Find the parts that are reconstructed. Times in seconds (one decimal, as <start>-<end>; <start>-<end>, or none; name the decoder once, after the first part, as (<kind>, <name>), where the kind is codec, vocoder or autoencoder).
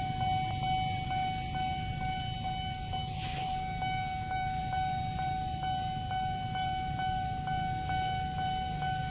3.0-4.6 (autoencoder, DAC-VAE)